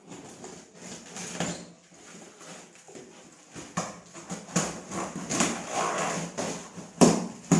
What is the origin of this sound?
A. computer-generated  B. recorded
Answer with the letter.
B